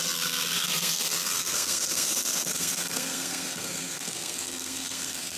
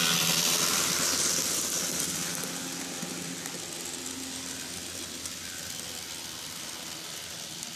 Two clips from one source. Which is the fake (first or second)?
first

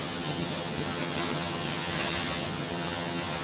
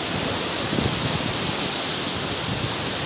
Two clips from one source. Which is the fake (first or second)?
first